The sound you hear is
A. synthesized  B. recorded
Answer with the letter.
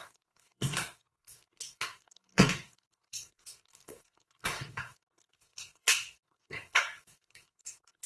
A